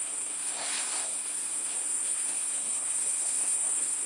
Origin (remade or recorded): remade